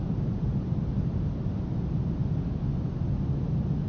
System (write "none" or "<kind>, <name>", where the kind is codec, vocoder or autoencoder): none